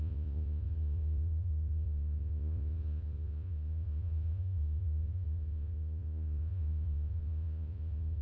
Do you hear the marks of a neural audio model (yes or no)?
yes